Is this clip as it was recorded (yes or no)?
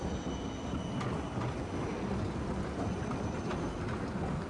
yes